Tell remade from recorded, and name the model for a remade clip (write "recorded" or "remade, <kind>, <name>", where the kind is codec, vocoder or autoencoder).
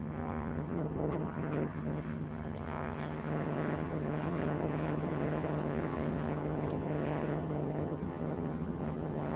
remade, vocoder, HiFi-GAN